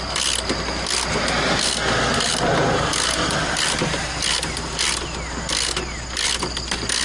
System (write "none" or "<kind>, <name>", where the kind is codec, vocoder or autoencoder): none